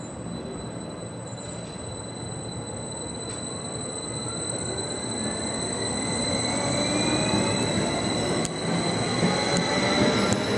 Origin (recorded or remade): recorded